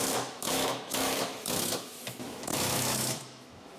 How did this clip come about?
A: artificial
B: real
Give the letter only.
A